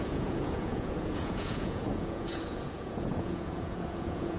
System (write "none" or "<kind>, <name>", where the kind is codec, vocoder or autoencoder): vocoder, Vocos